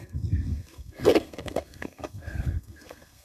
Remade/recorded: remade